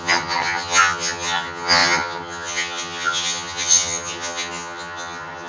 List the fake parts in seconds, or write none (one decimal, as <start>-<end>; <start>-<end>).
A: 0.0-5.5